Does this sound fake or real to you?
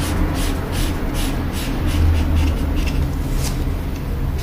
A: real